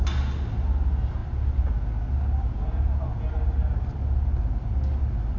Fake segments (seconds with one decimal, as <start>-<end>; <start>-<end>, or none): none

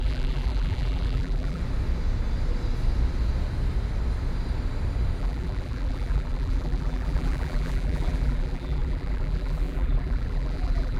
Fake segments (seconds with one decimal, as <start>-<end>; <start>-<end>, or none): 0.0-1.6; 5.2-11.0

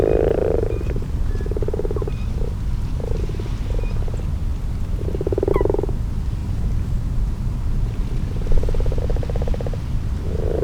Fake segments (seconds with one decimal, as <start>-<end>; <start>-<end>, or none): 0.4-1.3; 6.4-7.2

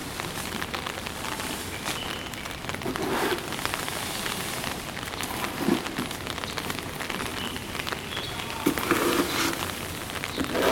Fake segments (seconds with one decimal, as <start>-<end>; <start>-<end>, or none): 0.0-4.8

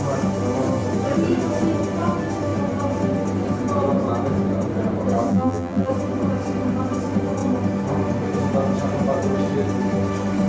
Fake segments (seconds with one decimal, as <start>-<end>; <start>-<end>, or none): 5.3-5.9

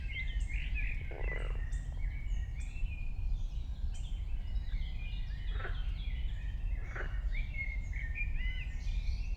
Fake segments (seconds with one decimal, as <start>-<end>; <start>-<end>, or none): 2.5-4.2; 6.8-8.3

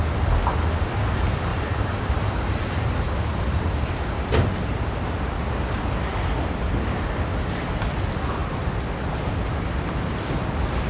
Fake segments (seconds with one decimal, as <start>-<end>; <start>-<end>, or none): 1.5-4.0